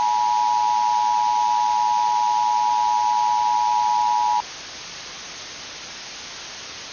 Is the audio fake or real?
real